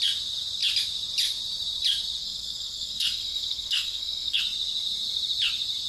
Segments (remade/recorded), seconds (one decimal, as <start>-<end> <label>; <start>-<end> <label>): 0.0-2.2 recorded; 2.2-4.4 remade; 4.4-5.9 recorded